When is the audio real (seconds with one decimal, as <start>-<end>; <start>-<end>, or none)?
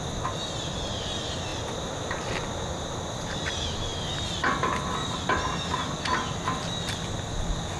0.0-7.8